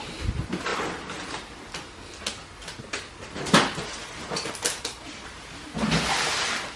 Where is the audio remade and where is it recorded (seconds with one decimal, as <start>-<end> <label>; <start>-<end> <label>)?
0.0-6.8 recorded